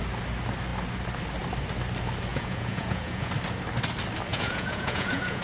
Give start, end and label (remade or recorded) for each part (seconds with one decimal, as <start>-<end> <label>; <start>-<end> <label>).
0.0-2.3 recorded; 2.3-3.3 remade; 3.3-4.3 recorded; 4.3-5.4 remade

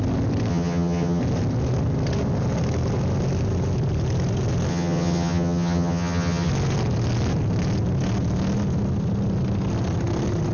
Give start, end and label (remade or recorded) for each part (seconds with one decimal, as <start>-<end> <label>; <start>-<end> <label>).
0.0-0.5 recorded; 0.5-1.2 remade; 1.2-4.7 recorded; 4.7-6.5 remade; 6.5-10.5 recorded

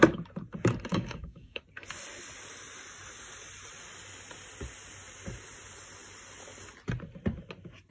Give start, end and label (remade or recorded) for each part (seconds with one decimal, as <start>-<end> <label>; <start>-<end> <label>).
0.0-0.9 recorded; 0.9-1.6 remade; 1.6-7.9 recorded

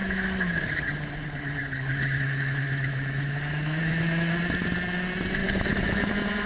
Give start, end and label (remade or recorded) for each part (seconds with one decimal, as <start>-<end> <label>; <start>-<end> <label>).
0.0-0.6 remade; 0.6-1.6 recorded; 1.6-3.8 remade; 3.8-5.4 recorded; 5.4-6.1 remade; 6.1-6.5 recorded